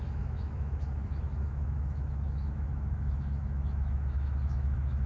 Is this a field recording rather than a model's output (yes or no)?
no